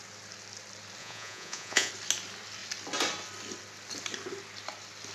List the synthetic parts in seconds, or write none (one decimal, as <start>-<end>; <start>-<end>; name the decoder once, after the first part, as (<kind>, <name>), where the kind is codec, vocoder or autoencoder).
1.0-1.9 (vocoder, Vocos)

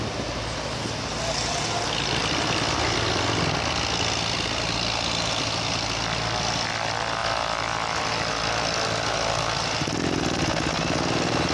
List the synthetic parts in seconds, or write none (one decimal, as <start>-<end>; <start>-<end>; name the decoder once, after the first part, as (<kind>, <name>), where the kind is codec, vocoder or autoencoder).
none

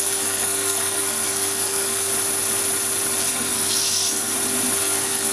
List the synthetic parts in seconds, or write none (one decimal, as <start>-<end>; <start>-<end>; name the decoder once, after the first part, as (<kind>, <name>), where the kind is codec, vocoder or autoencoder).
0.0-2.1 (codec, SNAC); 3.2-4.3; 4.8-5.3

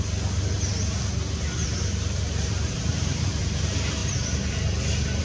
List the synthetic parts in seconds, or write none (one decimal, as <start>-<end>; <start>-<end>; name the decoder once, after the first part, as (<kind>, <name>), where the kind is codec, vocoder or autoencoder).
1.6-3.2 (vocoder, BigVGAN v2)

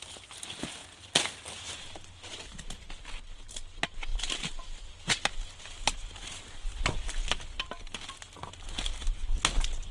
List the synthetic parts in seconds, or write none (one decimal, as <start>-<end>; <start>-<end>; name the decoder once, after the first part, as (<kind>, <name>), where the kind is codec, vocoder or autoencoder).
none